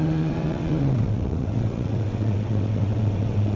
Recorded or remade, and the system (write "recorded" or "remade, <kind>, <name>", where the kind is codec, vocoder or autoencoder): remade, vocoder, WaveNeXt